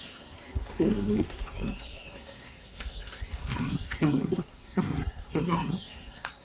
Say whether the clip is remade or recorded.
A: remade